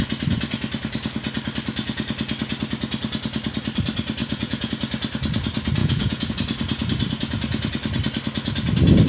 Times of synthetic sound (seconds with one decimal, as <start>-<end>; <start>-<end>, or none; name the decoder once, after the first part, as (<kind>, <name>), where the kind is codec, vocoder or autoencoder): 4.2-4.7 (vocoder, Vocos); 5.8-6.3